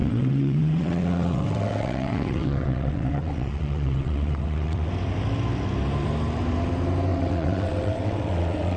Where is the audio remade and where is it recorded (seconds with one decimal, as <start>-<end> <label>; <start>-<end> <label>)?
0.0-4.9 remade; 4.9-7.1 recorded; 7.1-8.8 remade